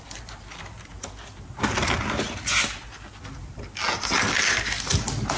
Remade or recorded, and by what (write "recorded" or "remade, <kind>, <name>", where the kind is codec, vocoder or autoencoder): recorded